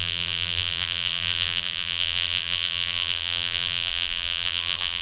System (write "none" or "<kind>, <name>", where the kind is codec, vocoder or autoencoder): vocoder, BigVGAN v2